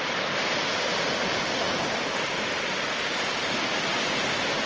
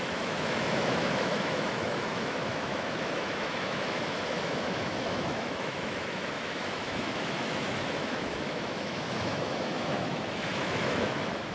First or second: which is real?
first